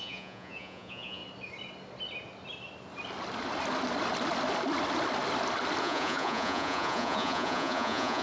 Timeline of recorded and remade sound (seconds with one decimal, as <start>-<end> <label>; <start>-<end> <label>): 0.0-1.2 remade; 1.2-5.8 recorded; 5.8-8.2 remade